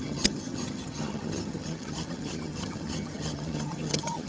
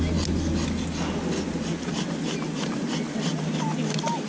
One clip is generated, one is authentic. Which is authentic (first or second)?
second